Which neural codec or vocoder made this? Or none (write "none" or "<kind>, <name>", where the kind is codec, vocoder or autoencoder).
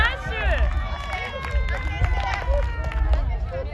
none